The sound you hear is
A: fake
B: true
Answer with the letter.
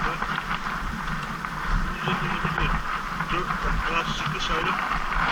B